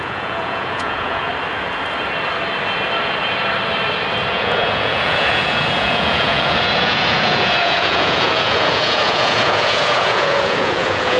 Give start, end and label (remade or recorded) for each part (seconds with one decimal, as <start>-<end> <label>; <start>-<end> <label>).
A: 0.0-1.3 remade; 1.3-4.3 recorded; 4.3-11.2 remade